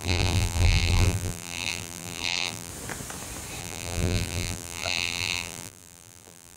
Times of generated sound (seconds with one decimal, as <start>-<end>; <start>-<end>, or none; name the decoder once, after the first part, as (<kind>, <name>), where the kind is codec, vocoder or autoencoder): 0.0-2.7 (vocoder, BigVGAN v2); 3.6-6.6